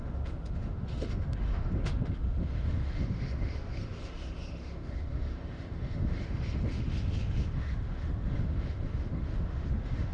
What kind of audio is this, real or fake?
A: fake